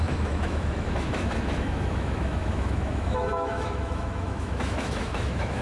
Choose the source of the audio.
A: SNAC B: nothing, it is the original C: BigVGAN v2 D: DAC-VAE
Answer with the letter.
D